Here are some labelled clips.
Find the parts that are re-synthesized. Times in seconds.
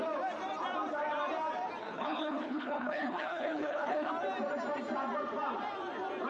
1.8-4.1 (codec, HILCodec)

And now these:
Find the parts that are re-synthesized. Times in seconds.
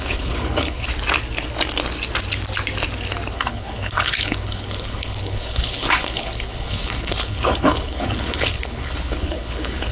0.0-0.9 (codec, HILCodec); 3.3-9.9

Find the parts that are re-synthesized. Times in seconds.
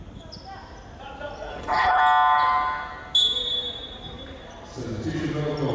1.5-2.0 (codec, HILCodec)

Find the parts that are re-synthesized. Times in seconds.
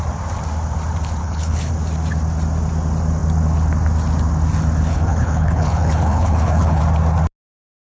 1.2-1.7 (codec, HILCodec); 4.9-6.8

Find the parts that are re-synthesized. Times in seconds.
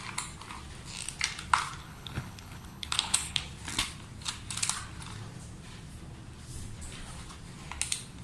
1.8-3.4 (codec, HILCodec)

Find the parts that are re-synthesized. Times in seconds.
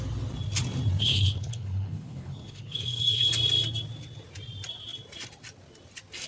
1.0-3.3 (codec, HILCodec)